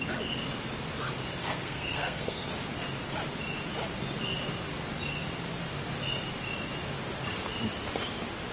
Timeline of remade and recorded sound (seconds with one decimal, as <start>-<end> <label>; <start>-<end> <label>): 0.0-1.4 recorded; 1.4-2.5 remade; 2.5-8.5 recorded